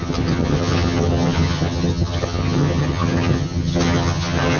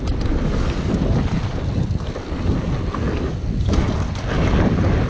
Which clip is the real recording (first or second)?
second